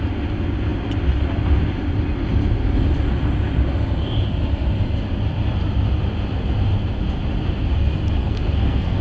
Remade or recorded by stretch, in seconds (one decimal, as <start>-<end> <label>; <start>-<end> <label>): 0.0-8.2 recorded; 8.2-9.0 remade